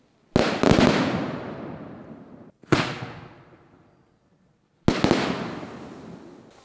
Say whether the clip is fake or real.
real